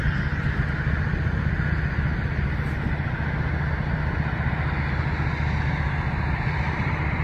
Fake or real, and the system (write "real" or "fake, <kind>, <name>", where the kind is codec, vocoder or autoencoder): real